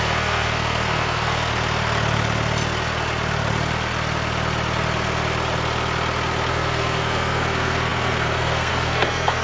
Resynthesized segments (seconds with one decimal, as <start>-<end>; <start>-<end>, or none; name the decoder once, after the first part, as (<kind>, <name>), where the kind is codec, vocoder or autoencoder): 0.0-1.5 (codec, SNAC); 6.5-9.4